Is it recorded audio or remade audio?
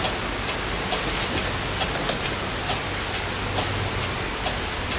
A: recorded